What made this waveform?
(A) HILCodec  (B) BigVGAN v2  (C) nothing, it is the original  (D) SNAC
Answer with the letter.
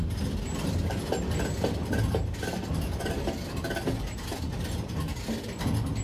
C